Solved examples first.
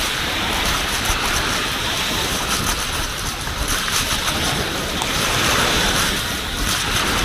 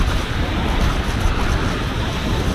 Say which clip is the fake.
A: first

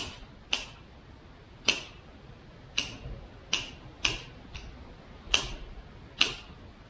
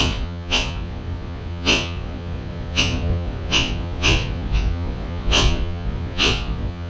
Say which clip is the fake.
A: second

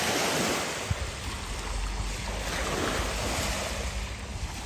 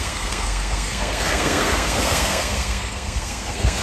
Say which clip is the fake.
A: second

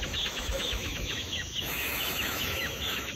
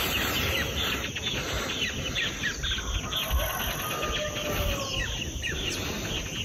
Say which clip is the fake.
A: first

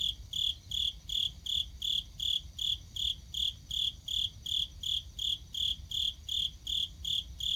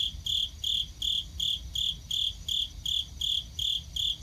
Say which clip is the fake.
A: first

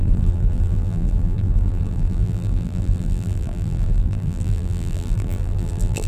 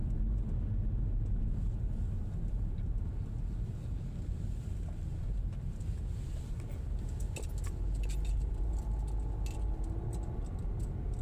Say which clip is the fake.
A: first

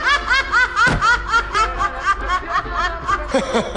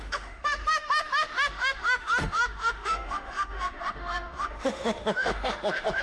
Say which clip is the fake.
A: second